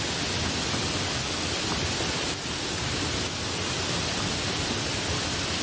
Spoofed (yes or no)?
no